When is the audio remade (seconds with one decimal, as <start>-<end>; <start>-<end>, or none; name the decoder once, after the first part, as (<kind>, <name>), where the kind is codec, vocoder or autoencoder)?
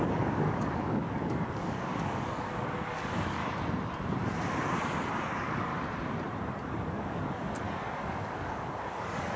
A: 0.0-3.4 (codec, DAC); 5.3-5.7; 6.6-9.4